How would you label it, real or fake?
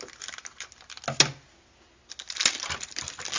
real